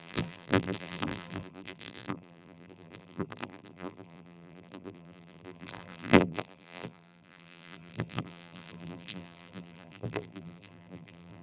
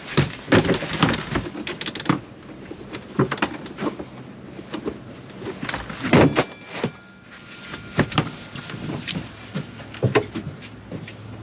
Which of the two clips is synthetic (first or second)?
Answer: first